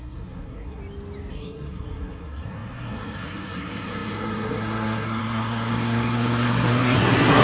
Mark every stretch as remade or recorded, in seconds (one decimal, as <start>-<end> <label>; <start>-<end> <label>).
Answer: 0.0-0.8 remade; 0.8-1.3 recorded; 1.3-7.4 remade